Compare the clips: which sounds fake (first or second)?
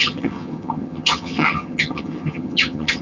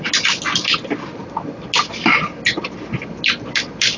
first